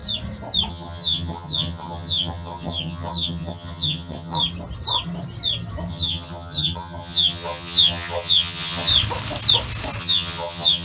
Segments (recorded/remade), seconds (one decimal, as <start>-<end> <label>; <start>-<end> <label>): 0.0-0.7 recorded; 0.7-4.4 remade; 4.4-5.9 recorded; 5.9-8.9 remade; 8.9-10.0 recorded; 10.0-10.8 remade